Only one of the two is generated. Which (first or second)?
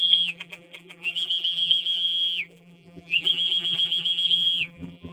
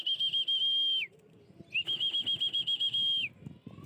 first